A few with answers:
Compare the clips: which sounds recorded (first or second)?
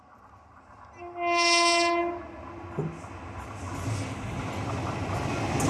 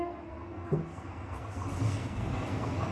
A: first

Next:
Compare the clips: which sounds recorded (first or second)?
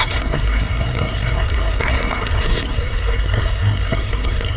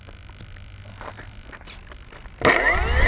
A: second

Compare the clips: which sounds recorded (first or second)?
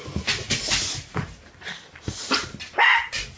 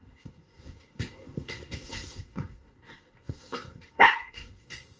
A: first